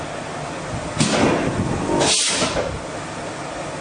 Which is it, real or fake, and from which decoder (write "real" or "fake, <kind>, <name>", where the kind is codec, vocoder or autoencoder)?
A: real